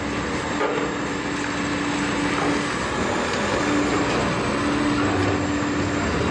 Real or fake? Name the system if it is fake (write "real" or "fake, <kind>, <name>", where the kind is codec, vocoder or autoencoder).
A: real